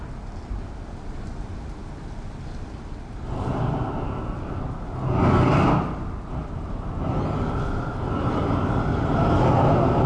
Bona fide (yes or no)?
yes